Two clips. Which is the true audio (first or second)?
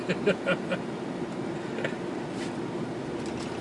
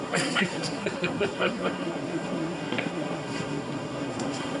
first